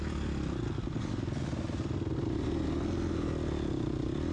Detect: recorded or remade recorded